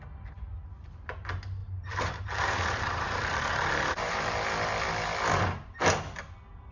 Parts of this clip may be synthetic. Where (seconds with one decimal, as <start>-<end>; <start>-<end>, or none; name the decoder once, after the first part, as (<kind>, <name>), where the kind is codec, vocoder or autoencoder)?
1.6-4.3 (vocoder, BigVGAN v2)